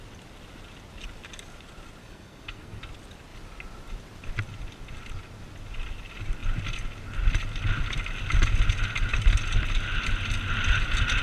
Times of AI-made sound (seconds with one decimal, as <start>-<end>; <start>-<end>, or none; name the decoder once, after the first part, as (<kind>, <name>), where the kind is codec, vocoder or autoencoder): 2.0-2.8 (codec, SNAC)